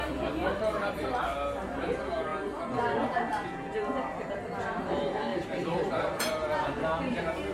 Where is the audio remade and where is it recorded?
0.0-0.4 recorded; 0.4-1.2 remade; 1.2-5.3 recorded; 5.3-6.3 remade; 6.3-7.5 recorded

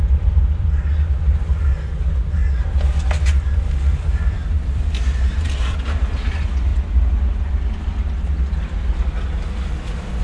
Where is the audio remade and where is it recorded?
0.0-2.4 remade; 2.4-3.7 recorded; 3.7-6.7 remade; 6.7-10.2 recorded

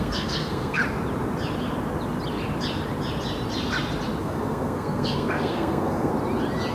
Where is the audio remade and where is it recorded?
0.0-0.8 remade; 0.8-4.2 recorded; 4.2-6.1 remade; 6.1-6.7 recorded

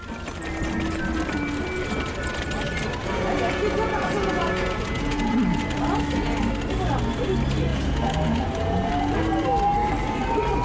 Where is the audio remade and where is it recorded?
0.0-3.0 recorded; 3.0-5.4 remade; 5.4-7.7 recorded; 7.7-8.9 remade; 8.9-10.6 recorded

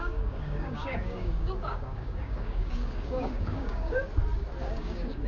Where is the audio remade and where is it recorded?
0.0-4.0 remade; 4.0-4.6 recorded; 4.6-5.3 remade

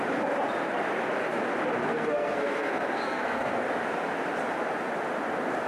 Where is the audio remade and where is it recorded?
0.0-1.8 recorded; 1.8-3.5 remade; 3.5-5.7 recorded